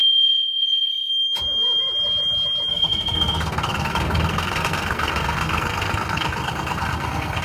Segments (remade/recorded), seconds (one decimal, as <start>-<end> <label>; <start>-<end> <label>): 0.0-1.1 remade; 1.1-2.7 recorded; 2.7-7.4 remade